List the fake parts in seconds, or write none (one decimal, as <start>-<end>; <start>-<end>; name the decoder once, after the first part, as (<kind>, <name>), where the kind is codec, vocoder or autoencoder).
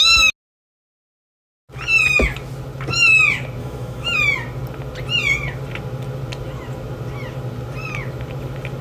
3.6-4.2 (autoencoder, DAC-VAE)